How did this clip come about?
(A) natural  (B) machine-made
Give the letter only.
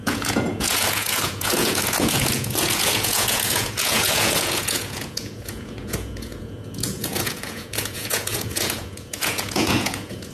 B